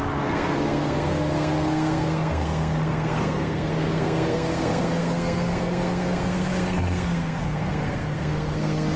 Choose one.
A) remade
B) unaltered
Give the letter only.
A